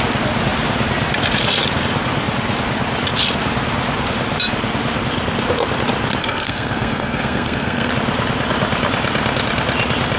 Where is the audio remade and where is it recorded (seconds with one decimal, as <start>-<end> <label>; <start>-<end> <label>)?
0.0-6.2 recorded; 6.2-7.9 remade; 7.9-10.2 recorded